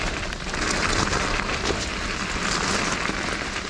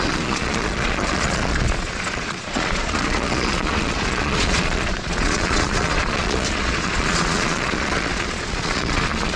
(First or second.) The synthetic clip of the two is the second